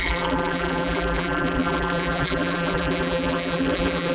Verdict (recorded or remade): remade